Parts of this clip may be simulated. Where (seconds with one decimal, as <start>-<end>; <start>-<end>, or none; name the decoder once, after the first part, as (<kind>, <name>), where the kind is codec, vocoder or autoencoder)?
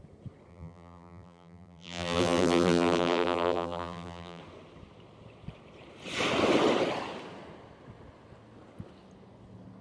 0.5-4.4 (vocoder, BigVGAN v2)